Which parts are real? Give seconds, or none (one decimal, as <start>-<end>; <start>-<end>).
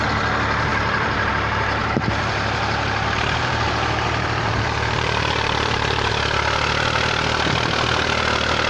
0.0-0.7; 1.3-1.8; 6.1-8.7